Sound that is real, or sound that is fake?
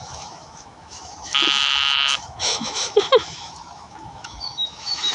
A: fake